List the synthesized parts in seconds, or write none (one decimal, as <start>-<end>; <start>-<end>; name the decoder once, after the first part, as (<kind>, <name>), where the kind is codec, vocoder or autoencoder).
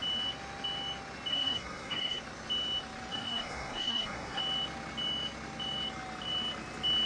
1.3-2.2 (codec, SNAC); 3.1-4.4